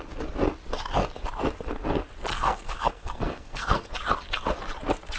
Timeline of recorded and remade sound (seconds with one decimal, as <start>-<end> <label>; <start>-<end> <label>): 0.0-2.3 recorded; 2.3-3.9 remade; 3.9-5.2 recorded